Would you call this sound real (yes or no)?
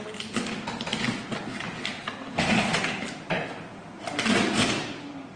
yes